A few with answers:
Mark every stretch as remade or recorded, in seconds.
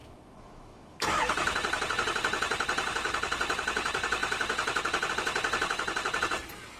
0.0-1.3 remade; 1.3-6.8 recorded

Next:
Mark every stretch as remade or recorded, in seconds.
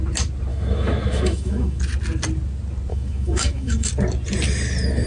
0.0-0.5 recorded; 0.5-1.8 remade; 1.8-2.9 recorded; 2.9-3.9 remade; 3.9-5.1 recorded